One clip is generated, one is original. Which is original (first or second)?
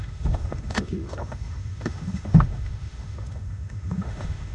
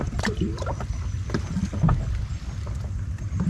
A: second